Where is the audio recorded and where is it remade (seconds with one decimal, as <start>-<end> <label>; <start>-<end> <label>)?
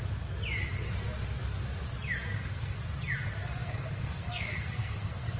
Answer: 0.0-2.3 recorded; 2.3-2.8 remade; 2.8-3.6 recorded; 3.6-5.4 remade